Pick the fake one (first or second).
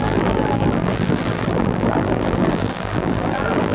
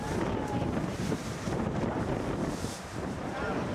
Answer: first